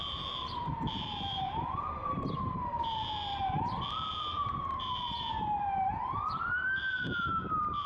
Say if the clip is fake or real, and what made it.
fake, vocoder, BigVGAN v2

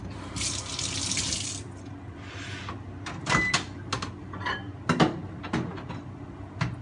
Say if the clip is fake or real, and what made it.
real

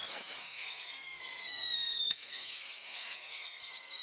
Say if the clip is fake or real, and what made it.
fake, codec, SNAC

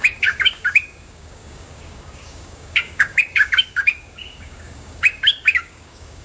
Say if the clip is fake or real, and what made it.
fake, codec, DAC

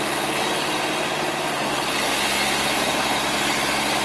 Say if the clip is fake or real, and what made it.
real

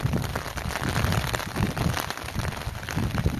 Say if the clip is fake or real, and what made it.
real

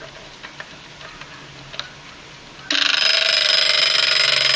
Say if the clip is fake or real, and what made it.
real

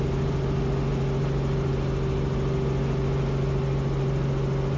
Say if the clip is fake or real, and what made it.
real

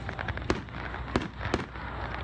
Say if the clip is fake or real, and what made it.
real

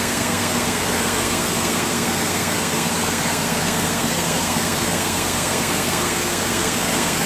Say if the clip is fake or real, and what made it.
fake, codec, SNAC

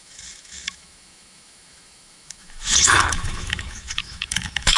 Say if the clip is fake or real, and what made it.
fake, autoencoder, DAC-VAE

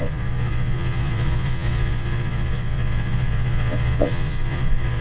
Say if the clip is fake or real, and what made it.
fake, vocoder, Vocos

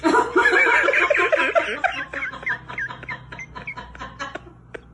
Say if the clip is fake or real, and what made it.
real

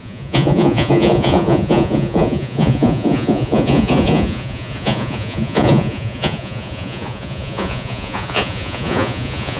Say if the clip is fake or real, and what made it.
fake, vocoder, Vocos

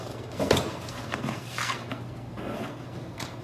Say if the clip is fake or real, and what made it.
fake, codec, SNAC